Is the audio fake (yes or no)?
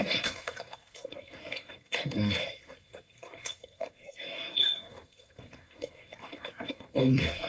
yes